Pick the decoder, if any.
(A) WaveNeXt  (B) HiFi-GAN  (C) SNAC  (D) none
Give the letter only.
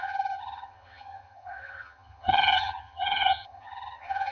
B